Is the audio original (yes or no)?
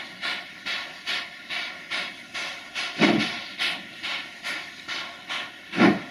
yes